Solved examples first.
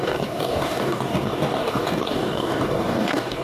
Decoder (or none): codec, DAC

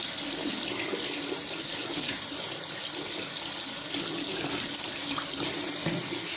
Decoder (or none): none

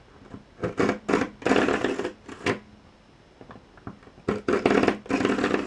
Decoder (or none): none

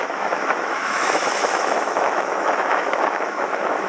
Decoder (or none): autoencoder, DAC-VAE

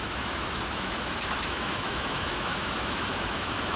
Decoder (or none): autoencoder, DAC-VAE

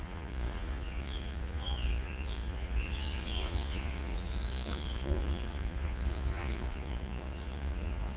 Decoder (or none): vocoder, Vocos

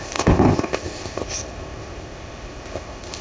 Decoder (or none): codec, ZipCodec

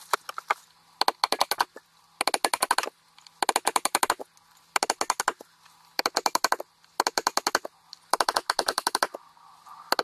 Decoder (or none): none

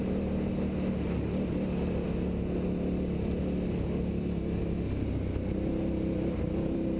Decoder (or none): none